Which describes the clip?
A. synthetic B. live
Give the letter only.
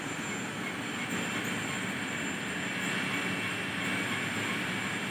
B